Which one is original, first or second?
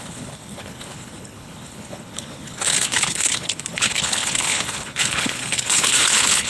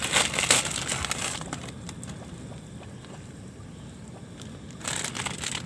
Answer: second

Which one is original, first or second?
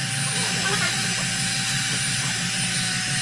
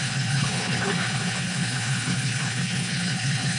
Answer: first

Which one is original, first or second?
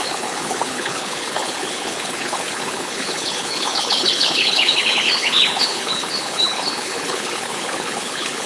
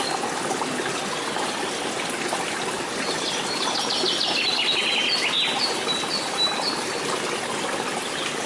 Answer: second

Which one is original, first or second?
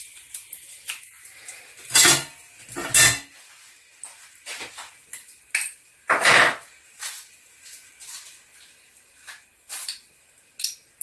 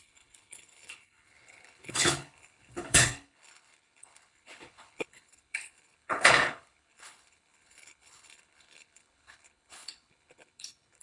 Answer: first